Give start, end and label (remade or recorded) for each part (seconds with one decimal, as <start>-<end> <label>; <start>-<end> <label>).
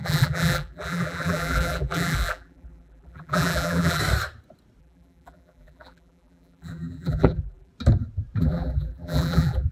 0.0-4.0 remade; 4.0-4.8 recorded; 4.8-7.7 remade; 7.7-8.4 recorded; 8.4-9.7 remade